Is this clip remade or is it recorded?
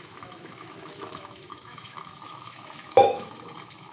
remade